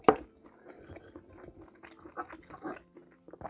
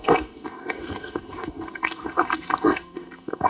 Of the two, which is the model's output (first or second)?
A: second